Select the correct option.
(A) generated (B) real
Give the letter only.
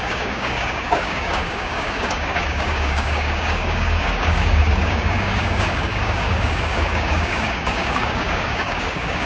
A